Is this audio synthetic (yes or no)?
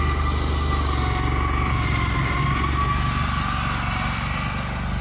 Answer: no